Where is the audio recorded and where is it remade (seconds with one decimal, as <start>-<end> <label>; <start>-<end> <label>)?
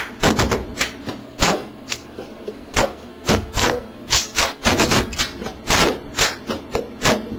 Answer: 0.0-1.2 recorded; 1.2-5.2 remade; 5.2-7.4 recorded